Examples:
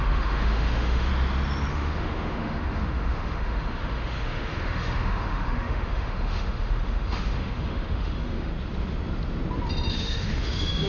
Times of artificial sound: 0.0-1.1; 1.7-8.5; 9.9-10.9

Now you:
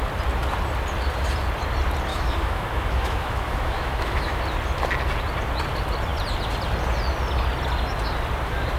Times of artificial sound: 2.1-4.4